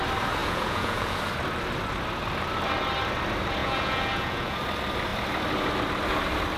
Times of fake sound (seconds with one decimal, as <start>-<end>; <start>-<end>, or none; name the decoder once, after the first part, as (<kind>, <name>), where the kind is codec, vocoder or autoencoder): 0.4-1.2 (vocoder, Vocos); 3.6-4.6